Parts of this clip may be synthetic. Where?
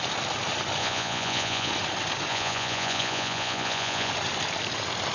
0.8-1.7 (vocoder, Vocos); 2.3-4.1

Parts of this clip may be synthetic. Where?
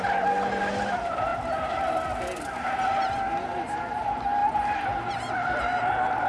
none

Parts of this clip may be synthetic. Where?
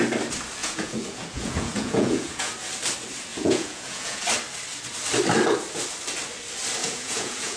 0.6-2.5 (vocoder, Vocos); 3.3-4.2; 6.8-7.6